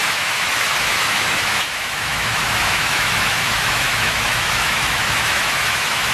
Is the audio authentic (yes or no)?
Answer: no